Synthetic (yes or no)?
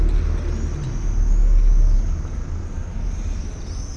no